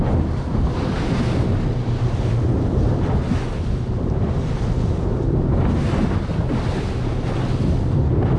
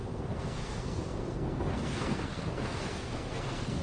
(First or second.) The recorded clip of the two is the first